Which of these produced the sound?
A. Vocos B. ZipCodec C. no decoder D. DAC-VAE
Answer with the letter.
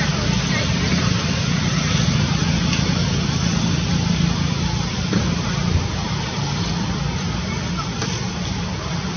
C